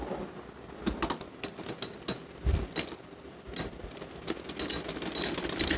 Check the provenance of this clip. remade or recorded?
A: recorded